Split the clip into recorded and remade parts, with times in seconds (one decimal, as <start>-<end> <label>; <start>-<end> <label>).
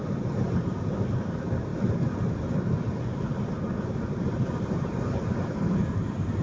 0.0-6.4 recorded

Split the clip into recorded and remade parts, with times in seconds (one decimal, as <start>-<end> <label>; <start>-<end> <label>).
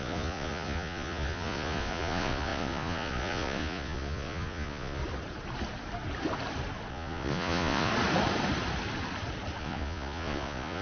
0.0-5.0 remade; 5.0-6.9 recorded; 6.9-7.9 remade; 7.9-9.6 recorded; 9.6-10.8 remade